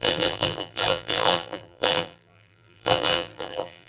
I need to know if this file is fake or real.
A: fake